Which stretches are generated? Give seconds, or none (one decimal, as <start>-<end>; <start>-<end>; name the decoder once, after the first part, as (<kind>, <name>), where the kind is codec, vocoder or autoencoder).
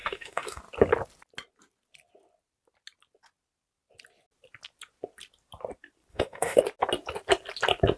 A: 0.0-0.6 (autoencoder, DAC-VAE); 6.1-6.6